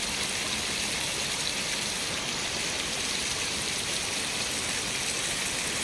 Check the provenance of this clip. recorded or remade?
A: recorded